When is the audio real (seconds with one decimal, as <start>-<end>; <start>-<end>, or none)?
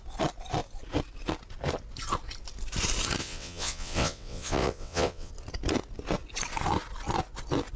0.0-3.2; 5.3-7.8